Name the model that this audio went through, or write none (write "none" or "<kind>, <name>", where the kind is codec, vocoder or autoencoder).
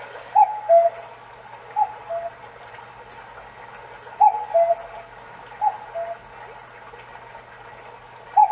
none